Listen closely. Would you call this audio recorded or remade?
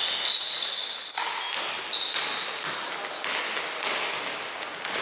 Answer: recorded